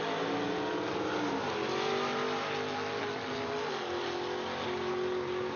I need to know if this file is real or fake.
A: real